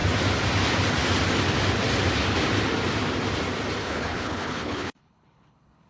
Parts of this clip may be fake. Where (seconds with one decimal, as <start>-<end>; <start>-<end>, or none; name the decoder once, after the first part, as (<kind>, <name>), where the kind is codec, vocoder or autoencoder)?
3.8-5.9 (codec, HILCodec)